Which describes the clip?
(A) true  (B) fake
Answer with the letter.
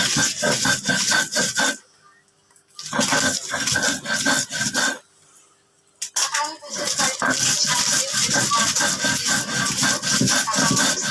A